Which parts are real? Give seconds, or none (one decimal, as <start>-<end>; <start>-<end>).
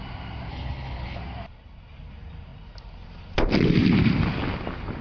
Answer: 0.0-0.5; 1.2-5.0